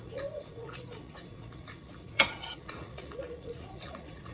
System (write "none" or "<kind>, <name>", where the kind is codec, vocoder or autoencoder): vocoder, Vocos